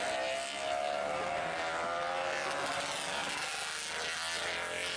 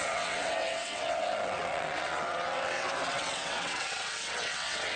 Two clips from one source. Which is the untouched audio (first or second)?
first